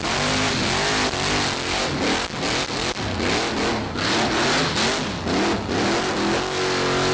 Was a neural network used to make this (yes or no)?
no